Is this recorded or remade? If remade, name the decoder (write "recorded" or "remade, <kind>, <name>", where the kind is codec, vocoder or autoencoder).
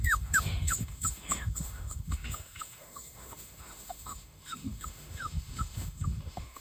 remade, autoencoder, DAC-VAE